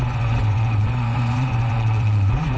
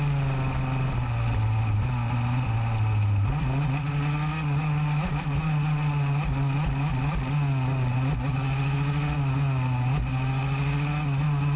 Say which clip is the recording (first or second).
second